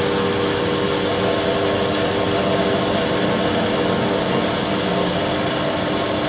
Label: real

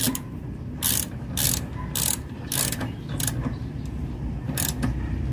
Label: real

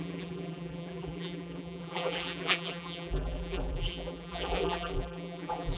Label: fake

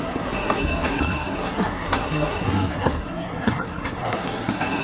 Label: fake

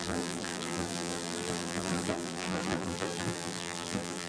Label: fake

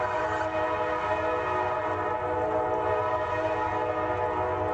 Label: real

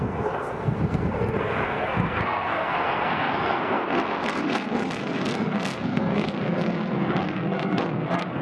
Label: fake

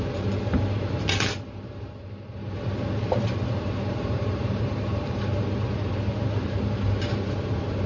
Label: fake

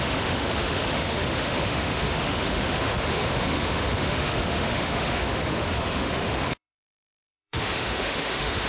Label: fake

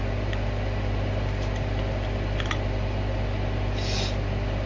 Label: real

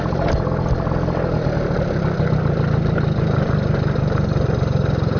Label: real